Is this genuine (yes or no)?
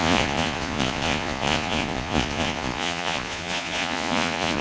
no